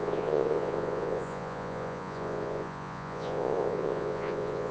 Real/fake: fake